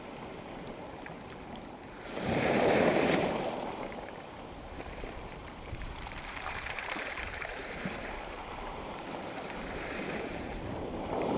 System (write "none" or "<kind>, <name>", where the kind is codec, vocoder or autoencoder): vocoder, BigVGAN v2